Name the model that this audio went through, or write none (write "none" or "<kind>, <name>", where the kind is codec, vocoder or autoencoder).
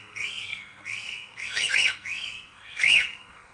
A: codec, SNAC